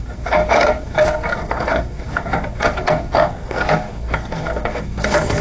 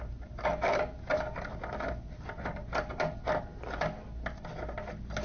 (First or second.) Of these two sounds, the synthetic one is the first